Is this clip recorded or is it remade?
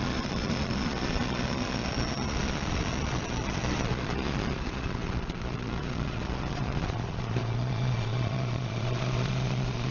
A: remade